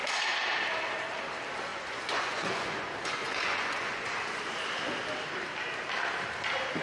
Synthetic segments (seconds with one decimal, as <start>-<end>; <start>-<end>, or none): 1.7-4.4